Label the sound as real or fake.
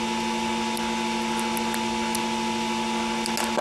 real